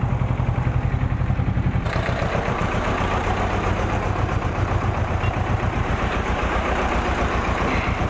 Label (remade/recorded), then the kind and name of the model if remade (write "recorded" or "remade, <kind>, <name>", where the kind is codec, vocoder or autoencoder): remade, vocoder, BigVGAN v2